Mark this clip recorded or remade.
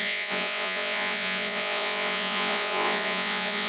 remade